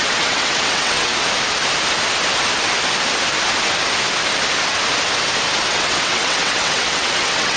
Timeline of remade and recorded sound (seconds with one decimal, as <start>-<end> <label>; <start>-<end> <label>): 0.0-1.1 remade; 1.1-5.7 recorded; 5.7-7.6 remade